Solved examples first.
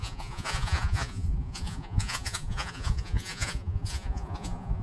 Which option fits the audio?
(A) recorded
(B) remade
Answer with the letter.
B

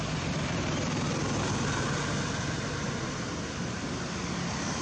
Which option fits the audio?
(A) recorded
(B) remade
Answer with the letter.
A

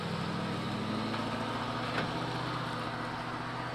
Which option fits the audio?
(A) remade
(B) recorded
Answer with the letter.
B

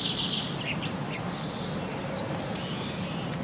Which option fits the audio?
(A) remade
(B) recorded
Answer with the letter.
B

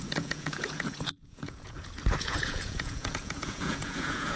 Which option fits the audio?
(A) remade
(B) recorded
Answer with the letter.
A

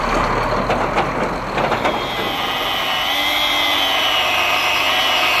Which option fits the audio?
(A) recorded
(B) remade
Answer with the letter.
A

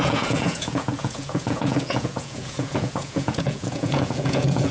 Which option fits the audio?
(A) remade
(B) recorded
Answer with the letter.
A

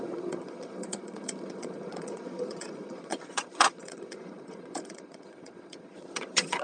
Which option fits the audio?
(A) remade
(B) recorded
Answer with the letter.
A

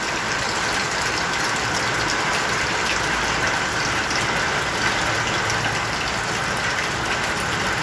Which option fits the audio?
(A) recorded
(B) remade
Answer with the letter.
A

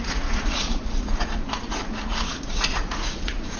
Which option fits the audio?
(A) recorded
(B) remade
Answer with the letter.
B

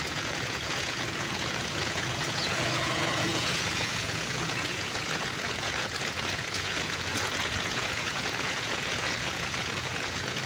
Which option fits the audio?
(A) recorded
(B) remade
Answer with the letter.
B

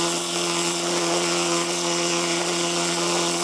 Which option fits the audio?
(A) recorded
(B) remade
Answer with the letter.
B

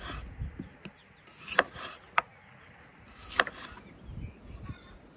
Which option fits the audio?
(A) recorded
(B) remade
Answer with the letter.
A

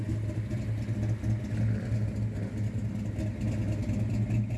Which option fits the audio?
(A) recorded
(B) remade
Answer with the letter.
A